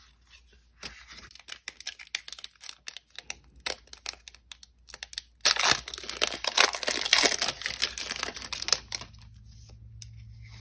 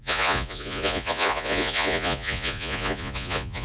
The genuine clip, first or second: first